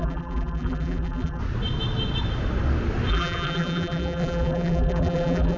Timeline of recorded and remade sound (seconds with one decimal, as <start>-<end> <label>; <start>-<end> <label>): 0.0-1.4 remade; 1.4-3.1 recorded; 3.1-5.6 remade